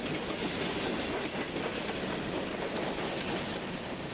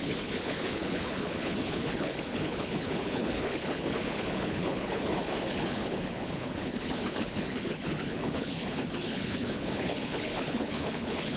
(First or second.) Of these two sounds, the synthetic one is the second